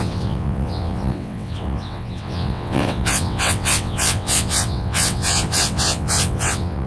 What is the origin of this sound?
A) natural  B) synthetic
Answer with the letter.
B